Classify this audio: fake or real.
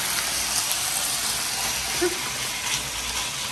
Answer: real